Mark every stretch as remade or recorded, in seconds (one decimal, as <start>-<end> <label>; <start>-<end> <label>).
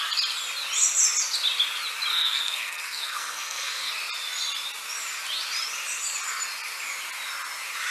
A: 0.0-2.1 recorded; 2.1-3.9 remade; 3.9-7.9 recorded